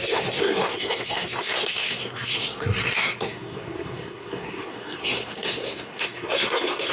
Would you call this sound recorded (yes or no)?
no